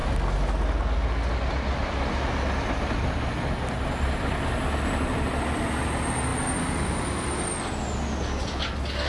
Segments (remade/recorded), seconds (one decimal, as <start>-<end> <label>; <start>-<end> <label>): 0.0-9.1 recorded